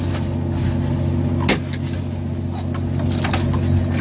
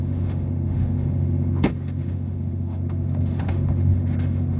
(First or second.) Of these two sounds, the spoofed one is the second